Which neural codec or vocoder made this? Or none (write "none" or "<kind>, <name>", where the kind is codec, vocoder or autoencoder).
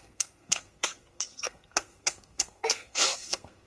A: codec, SNAC